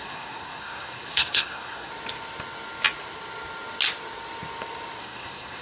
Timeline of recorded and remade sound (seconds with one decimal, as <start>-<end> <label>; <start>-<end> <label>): 0.0-1.9 remade; 1.9-5.0 recorded; 5.0-5.6 remade